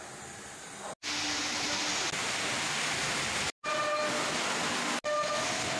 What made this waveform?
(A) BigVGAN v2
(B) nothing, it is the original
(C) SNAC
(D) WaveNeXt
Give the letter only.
B